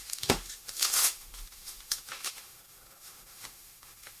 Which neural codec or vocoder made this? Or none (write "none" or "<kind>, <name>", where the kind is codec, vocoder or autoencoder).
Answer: autoencoder, DAC-VAE